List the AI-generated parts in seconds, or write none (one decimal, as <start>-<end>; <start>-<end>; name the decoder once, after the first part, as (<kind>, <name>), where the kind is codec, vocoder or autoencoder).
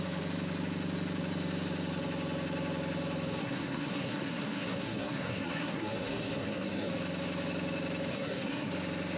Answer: 3.4-6.9 (codec, SNAC); 8.1-8.7